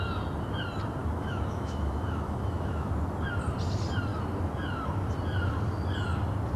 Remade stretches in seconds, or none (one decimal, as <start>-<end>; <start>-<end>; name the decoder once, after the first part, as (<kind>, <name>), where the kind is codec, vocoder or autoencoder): 1.0-2.9 (autoencoder, DAC-VAE)